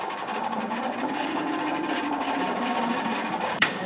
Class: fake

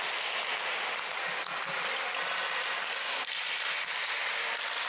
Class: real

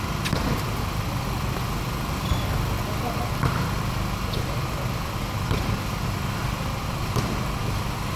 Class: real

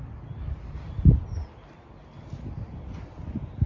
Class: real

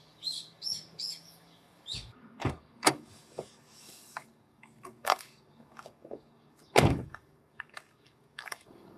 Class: fake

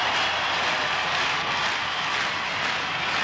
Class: real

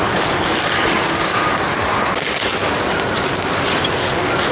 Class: real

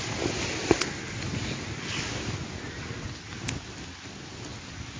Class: real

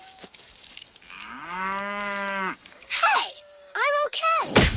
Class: fake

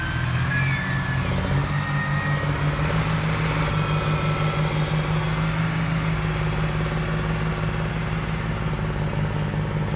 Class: real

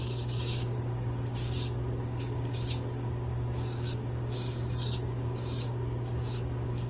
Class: fake